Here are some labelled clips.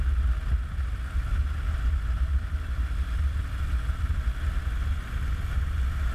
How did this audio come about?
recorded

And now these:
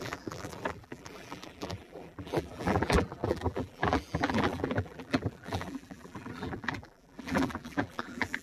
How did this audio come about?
remade